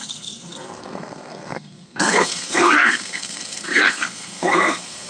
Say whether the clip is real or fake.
fake